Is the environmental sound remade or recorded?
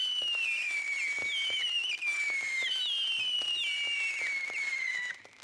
recorded